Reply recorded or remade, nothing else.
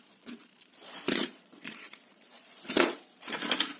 remade